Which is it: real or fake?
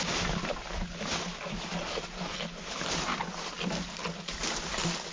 real